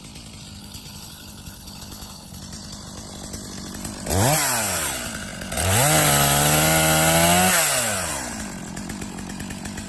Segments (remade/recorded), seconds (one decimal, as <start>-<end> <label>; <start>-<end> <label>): 0.0-0.6 recorded; 0.6-2.4 remade; 2.4-9.9 recorded